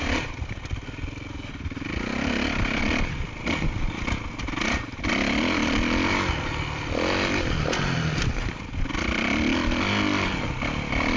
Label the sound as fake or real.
real